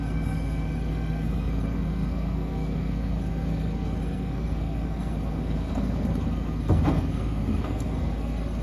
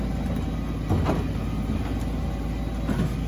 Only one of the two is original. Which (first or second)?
second